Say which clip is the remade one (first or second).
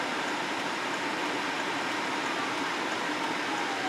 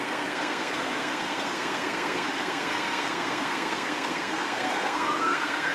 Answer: second